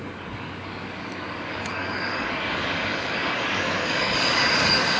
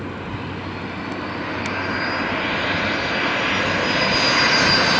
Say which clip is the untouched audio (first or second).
second